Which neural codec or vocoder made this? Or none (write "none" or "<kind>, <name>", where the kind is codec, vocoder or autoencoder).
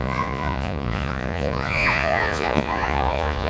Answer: vocoder, Vocos